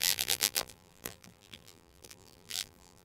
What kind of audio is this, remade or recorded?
remade